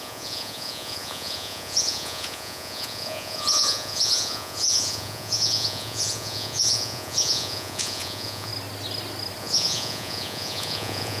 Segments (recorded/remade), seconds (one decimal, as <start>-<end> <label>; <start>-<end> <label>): 0.0-8.5 remade; 8.5-9.4 recorded; 9.4-11.2 remade